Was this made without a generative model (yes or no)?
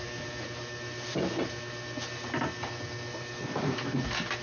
yes